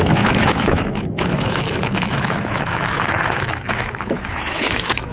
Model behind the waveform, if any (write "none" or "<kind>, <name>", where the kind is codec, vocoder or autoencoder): autoencoder, DAC-VAE